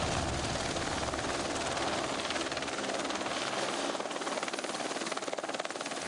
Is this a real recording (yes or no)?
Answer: yes